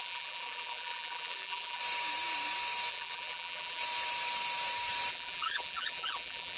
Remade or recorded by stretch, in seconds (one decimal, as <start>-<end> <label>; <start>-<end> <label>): 0.0-1.8 remade; 1.8-2.9 recorded; 2.9-3.8 remade; 3.8-5.1 recorded; 5.1-6.6 remade